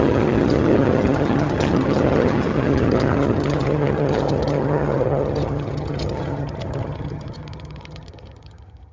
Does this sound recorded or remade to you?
remade